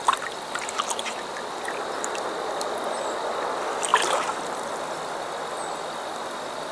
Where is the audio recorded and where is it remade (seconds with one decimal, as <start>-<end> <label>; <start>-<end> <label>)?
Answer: 0.0-6.7 recorded